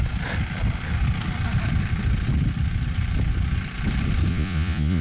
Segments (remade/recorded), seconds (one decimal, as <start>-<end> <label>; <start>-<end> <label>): 0.0-4.3 recorded; 4.3-5.0 remade